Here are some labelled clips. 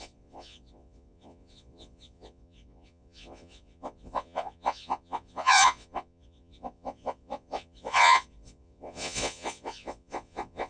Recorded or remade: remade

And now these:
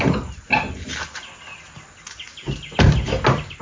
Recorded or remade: recorded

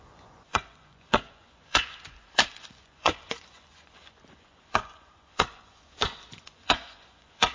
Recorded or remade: remade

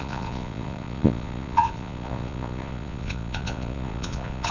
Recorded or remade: remade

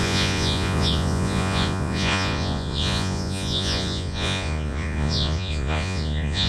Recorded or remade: remade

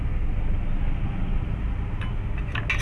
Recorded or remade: recorded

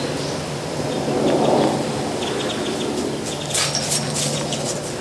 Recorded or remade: recorded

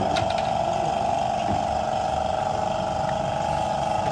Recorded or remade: recorded